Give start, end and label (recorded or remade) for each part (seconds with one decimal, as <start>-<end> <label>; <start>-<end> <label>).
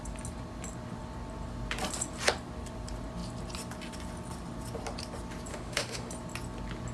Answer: 0.0-5.5 recorded; 5.5-6.1 remade; 6.1-6.9 recorded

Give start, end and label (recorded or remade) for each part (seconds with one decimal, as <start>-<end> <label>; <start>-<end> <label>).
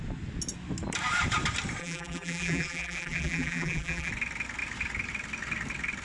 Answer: 0.0-1.8 recorded; 1.8-4.1 remade; 4.1-6.0 recorded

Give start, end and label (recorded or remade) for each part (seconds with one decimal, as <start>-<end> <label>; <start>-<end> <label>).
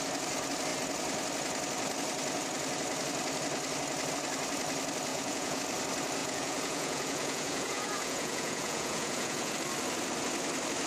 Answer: 0.0-5.1 recorded; 5.1-5.6 remade; 5.6-6.2 recorded; 6.2-9.5 remade; 9.5-10.9 recorded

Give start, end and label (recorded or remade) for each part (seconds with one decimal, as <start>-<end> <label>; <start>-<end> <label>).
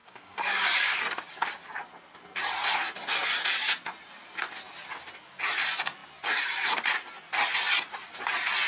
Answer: 0.0-1.0 remade; 1.0-8.7 recorded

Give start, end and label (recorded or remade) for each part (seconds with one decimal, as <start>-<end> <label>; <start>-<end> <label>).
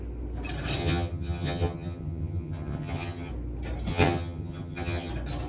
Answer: 0.0-0.8 recorded; 0.8-3.3 remade; 3.3-3.9 recorded; 3.9-5.1 remade; 5.1-5.5 recorded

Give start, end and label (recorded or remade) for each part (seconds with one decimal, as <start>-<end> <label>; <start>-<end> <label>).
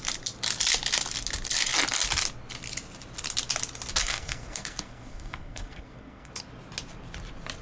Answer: 0.0-4.0 recorded; 4.0-6.3 remade; 6.3-7.6 recorded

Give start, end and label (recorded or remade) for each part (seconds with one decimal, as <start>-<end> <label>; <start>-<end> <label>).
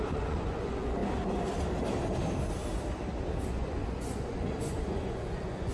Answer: 0.0-1.0 remade; 1.0-3.5 recorded; 3.5-5.7 remade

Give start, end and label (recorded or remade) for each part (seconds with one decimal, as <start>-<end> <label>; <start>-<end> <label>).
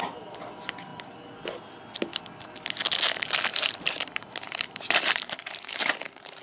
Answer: 0.0-3.5 recorded; 3.5-6.4 remade